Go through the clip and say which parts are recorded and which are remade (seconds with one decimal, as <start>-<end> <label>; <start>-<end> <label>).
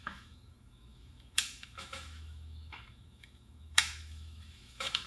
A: 0.0-5.1 remade